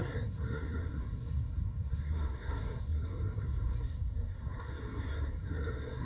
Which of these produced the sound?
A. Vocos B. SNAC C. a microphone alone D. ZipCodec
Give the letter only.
B